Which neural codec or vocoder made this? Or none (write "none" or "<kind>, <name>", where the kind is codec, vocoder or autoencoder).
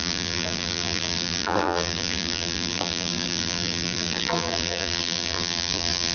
vocoder, BigVGAN v2